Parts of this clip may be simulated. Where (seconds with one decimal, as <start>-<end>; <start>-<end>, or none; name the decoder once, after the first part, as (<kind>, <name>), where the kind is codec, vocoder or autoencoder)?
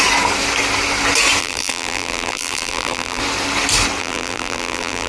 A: 1.4-3.2 (vocoder, BigVGAN v2); 4.0-5.1